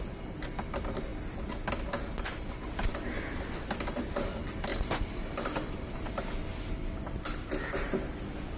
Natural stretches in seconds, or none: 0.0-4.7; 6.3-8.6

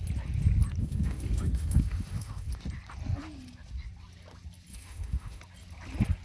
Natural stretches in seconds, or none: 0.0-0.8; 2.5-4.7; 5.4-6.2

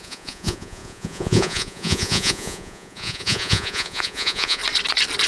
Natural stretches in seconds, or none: 4.6-5.3

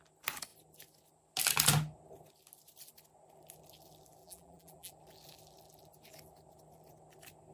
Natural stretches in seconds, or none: 0.0-4.2; 4.9-7.5